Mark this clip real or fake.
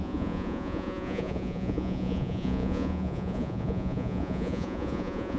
fake